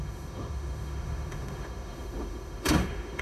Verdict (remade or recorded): remade